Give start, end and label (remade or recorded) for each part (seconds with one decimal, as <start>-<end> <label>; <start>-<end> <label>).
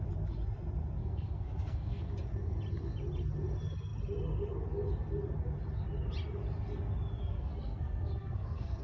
0.0-1.0 recorded; 1.0-2.1 remade; 2.1-7.2 recorded; 7.2-8.8 remade